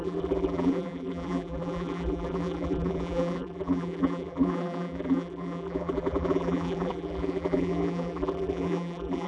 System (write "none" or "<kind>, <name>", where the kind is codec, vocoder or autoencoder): vocoder, BigVGAN v2